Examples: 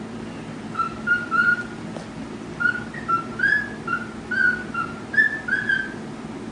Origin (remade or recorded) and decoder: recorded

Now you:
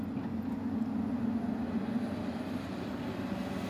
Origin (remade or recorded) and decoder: recorded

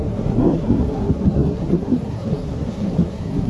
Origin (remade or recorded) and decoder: remade, codec, SNAC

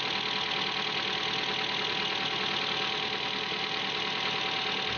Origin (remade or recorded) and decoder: recorded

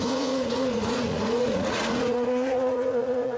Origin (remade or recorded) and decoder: remade, vocoder, Vocos